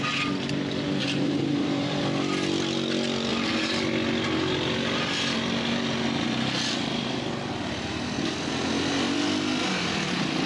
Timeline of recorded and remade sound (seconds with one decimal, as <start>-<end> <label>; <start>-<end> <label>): 0.0-1.0 recorded; 1.0-2.0 remade; 2.0-10.5 recorded